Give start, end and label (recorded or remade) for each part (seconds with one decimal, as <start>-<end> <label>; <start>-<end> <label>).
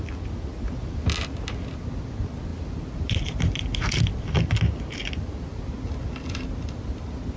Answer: 0.0-7.4 recorded